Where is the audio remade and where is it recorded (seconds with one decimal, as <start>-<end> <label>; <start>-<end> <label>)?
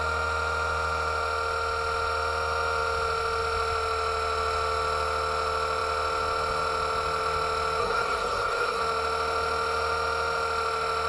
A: 0.0-7.8 recorded; 7.8-8.8 remade; 8.8-11.1 recorded